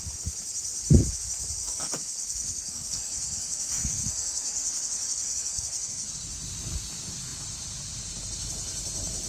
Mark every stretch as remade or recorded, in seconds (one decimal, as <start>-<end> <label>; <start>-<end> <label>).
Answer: 0.0-1.6 recorded; 1.6-6.1 remade; 6.1-9.3 recorded